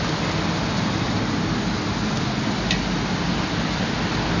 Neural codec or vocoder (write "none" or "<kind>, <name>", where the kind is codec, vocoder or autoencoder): none